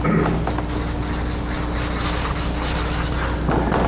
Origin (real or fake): real